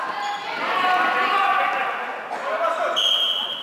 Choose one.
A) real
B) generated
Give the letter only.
A